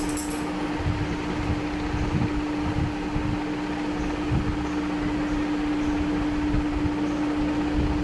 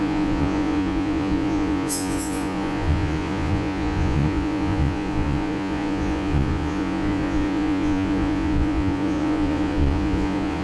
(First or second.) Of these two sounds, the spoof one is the second